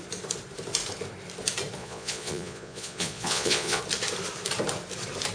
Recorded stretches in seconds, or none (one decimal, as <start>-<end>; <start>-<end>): 0.0-1.8; 3.8-5.3